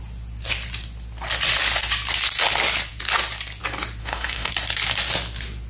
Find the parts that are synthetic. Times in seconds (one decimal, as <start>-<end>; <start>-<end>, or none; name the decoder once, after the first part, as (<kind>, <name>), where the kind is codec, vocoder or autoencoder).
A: 4.0-4.5 (autoencoder, DAC-VAE)